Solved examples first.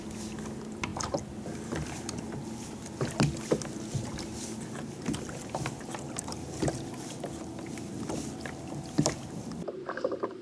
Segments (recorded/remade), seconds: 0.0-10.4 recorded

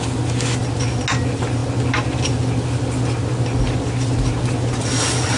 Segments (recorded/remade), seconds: 0.0-5.4 recorded

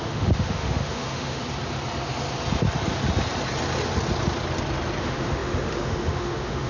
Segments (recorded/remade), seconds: 0.0-1.4 remade; 1.4-5.0 recorded; 5.0-6.7 remade

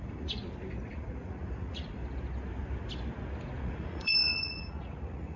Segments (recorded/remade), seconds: 0.0-0.4 remade; 0.4-0.9 recorded; 0.9-2.0 remade; 2.0-3.6 recorded; 3.6-5.4 remade